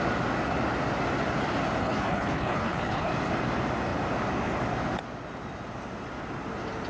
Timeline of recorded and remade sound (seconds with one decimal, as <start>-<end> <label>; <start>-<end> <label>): 0.0-1.8 recorded; 1.8-3.1 remade; 3.1-6.9 recorded